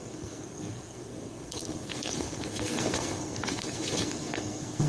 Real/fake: fake